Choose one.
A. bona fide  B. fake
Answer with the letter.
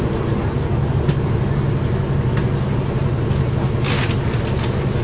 A